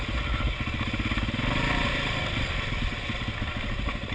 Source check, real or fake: real